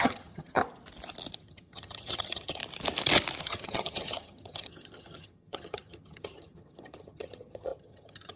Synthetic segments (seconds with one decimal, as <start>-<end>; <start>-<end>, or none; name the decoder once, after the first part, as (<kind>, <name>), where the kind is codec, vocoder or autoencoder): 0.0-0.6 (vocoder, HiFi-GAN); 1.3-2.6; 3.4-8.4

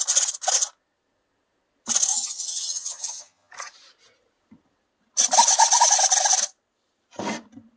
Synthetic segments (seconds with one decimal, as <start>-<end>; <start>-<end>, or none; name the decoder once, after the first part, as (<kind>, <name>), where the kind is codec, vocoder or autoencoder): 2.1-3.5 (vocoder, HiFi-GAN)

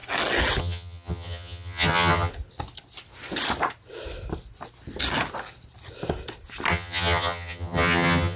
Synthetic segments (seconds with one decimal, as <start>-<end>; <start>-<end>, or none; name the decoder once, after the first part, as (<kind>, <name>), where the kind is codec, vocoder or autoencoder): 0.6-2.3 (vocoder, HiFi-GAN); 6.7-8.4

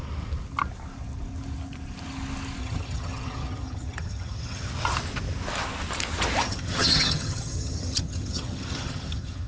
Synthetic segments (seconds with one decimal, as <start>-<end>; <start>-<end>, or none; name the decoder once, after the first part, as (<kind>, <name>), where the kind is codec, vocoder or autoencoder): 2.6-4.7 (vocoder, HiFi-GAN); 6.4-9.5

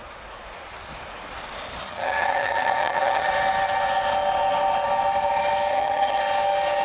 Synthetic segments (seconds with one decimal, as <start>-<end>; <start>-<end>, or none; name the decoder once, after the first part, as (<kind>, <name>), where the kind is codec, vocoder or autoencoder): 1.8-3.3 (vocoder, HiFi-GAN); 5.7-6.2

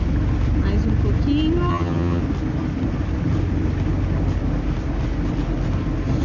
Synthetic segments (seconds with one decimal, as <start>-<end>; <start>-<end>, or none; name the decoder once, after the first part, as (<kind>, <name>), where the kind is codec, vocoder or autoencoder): 1.7-2.2 (vocoder, HiFi-GAN)

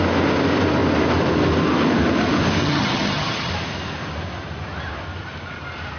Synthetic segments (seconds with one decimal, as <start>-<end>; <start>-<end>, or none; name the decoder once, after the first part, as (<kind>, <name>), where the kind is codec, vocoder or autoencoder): 2.6-3.5 (vocoder, HiFi-GAN)

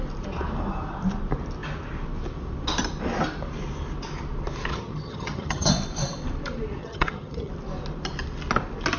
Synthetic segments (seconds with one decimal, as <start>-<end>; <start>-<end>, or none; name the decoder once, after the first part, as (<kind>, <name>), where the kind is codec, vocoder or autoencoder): 4.7-5.7 (vocoder, HiFi-GAN); 6.8-7.5